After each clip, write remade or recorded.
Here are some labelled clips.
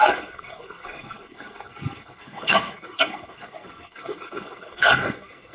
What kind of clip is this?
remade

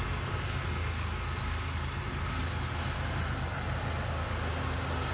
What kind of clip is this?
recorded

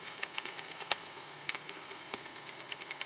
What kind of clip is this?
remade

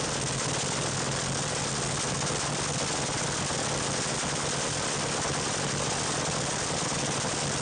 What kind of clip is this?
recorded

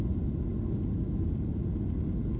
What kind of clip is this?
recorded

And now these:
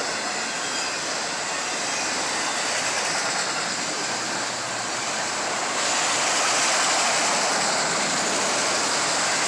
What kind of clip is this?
recorded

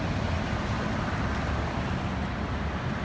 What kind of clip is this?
recorded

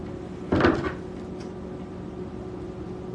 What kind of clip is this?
recorded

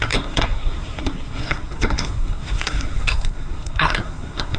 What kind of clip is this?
remade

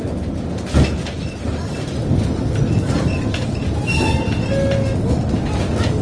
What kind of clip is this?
recorded